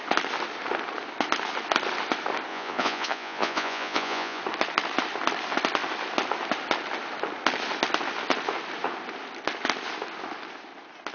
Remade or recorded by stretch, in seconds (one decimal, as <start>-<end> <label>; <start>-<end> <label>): 0.0-2.5 recorded; 2.5-4.4 remade; 4.4-11.1 recorded